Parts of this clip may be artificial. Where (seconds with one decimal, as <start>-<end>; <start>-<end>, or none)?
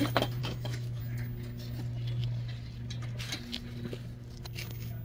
0.4-1.0